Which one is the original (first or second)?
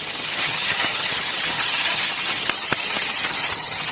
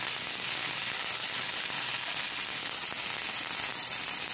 second